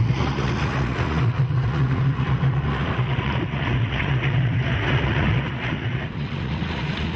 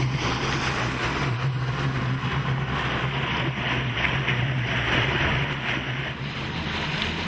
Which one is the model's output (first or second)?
first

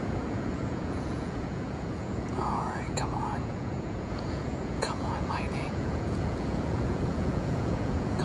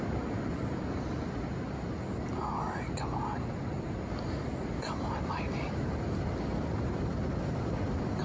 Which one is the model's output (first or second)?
first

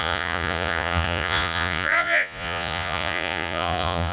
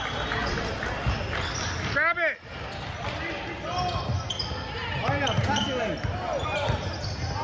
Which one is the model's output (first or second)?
first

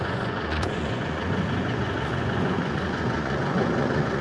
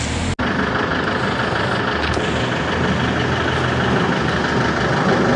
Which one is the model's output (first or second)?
first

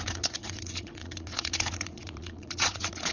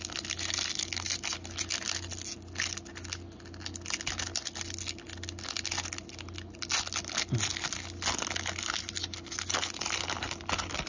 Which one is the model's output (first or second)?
first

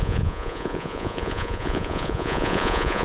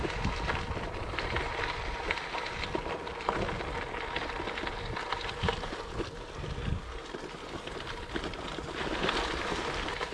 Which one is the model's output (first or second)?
first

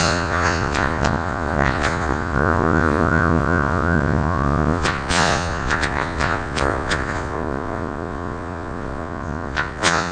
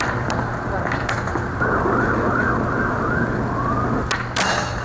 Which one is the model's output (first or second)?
first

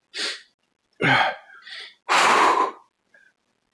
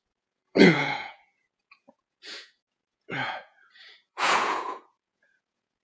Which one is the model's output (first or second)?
second